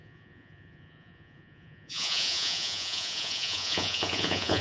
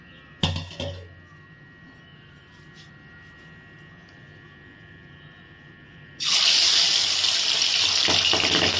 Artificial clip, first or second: first